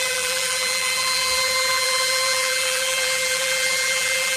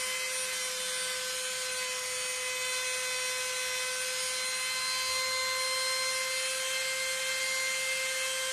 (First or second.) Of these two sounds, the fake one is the first